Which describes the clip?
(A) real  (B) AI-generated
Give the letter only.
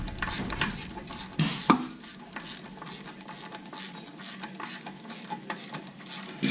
A